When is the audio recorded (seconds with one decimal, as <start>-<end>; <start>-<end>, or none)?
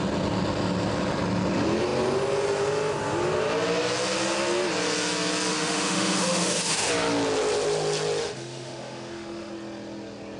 0.0-5.5; 6.9-8.2; 9.5-10.4